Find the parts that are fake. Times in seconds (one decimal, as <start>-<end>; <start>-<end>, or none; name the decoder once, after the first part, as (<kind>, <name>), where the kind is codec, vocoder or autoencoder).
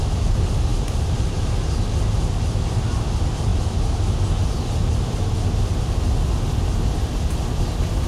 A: 0.7-1.4 (vocoder, BigVGAN v2)